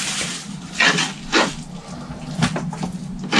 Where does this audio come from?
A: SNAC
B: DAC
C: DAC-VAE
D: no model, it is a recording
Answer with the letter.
D